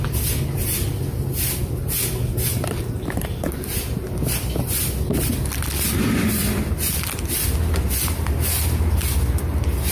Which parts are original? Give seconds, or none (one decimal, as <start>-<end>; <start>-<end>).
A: 0.0-9.9